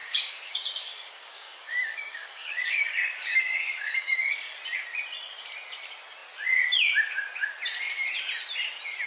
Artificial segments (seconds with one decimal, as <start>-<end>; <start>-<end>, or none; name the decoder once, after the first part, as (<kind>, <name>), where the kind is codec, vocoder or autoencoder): 0.0-4.3 (codec, DAC)